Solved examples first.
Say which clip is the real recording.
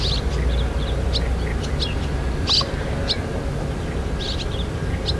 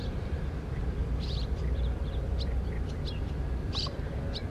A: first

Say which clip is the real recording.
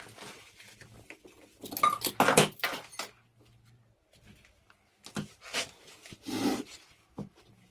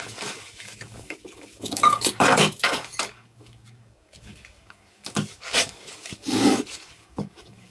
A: first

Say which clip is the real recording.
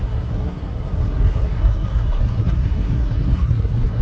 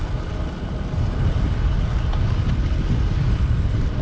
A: second